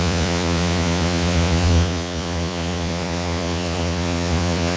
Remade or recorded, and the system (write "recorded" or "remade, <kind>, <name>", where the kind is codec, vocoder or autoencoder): remade, vocoder, Vocos